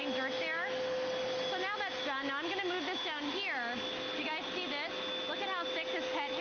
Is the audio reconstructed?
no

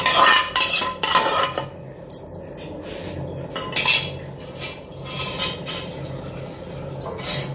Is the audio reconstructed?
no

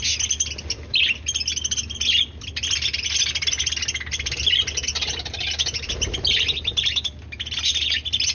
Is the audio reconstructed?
no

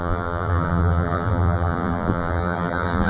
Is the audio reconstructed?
yes